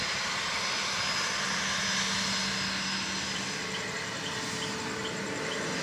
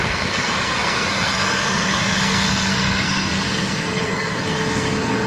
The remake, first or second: second